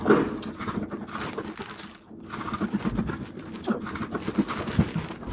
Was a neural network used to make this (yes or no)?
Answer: no